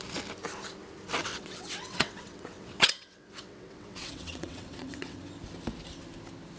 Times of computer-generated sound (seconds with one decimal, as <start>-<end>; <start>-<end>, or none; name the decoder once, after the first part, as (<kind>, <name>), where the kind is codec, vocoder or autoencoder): 1.2-5.2 (vocoder, WaveNeXt)